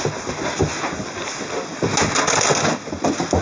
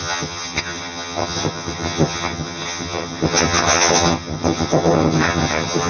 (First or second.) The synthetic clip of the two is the second